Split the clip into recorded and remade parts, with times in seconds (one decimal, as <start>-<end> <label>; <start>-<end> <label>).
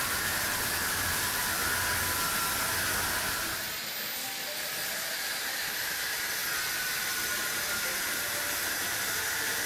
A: 0.0-1.6 remade; 1.6-4.9 recorded; 4.9-6.4 remade; 6.4-6.9 recorded; 6.9-9.7 remade